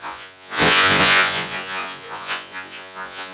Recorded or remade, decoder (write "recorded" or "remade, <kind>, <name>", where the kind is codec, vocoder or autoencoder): remade, vocoder, Vocos